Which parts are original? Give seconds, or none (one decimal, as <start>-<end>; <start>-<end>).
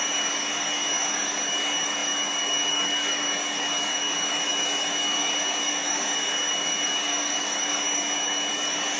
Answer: none